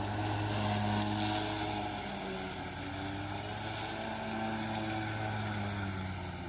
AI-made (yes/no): no